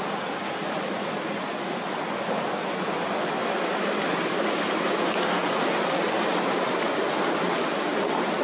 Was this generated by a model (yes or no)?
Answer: no